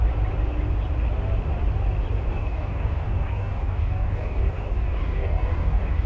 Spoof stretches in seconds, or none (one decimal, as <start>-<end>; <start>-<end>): 2.3-6.1